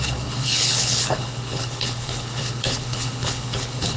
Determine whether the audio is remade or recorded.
remade